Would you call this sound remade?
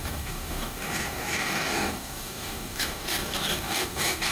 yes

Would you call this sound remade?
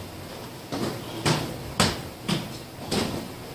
no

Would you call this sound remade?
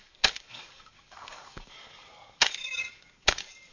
yes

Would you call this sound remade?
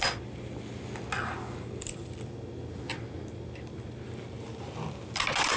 no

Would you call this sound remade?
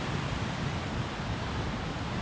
no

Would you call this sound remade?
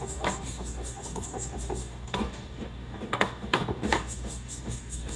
yes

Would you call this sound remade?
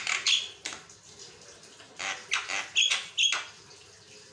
no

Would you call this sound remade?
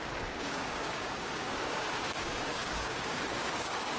yes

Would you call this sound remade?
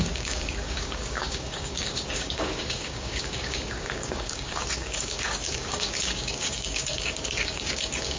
yes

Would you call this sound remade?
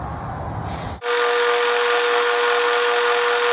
no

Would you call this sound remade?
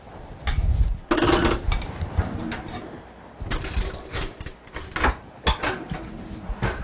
no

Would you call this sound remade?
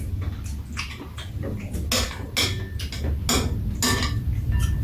no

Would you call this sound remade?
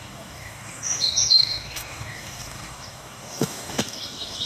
yes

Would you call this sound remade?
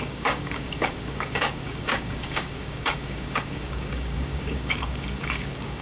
yes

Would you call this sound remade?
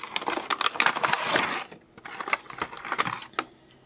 no